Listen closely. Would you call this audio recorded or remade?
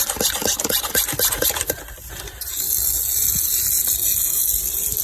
recorded